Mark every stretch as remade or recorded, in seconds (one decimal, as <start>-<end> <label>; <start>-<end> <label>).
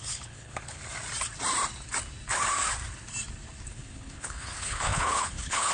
0.0-0.8 remade; 0.8-3.7 recorded; 3.7-5.7 remade